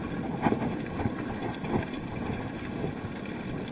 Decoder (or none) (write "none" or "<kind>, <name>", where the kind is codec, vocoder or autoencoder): none